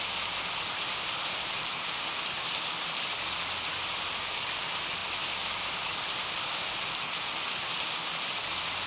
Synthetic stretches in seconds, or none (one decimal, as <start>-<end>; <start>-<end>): none